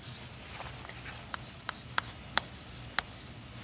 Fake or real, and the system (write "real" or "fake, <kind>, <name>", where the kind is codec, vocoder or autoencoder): real